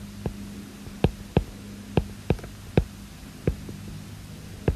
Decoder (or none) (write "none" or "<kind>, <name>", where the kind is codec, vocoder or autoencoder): none